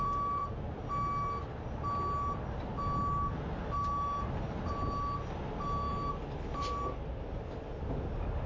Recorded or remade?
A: recorded